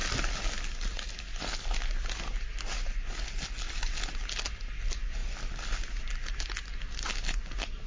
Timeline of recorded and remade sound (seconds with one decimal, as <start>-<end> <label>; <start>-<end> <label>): 0.0-7.9 recorded